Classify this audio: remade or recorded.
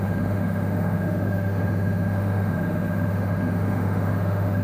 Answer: remade